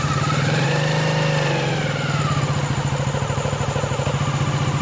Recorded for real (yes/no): yes